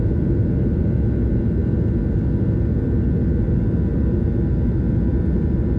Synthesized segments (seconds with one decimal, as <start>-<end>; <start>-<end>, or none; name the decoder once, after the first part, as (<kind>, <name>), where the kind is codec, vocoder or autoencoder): none